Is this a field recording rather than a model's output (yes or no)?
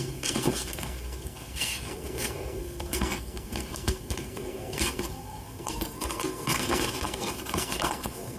no